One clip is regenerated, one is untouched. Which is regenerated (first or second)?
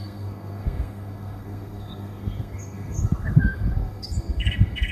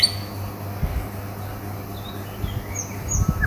first